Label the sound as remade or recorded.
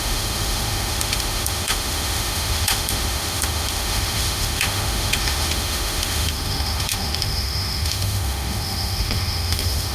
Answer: remade